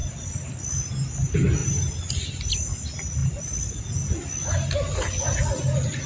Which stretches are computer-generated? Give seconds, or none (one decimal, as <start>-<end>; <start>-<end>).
1.6-2.5